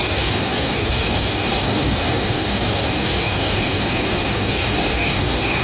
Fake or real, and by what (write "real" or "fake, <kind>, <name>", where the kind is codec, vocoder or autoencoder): fake, codec, DAC